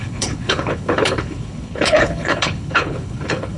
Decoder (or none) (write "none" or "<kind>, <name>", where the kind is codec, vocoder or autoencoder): codec, HILCodec